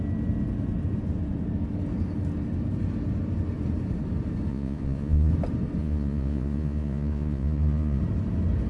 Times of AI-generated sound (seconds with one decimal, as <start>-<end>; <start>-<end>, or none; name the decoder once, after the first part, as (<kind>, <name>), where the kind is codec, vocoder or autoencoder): 4.5-5.3 (vocoder, Vocos); 5.8-8.0